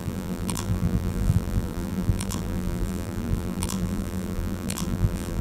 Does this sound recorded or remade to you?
remade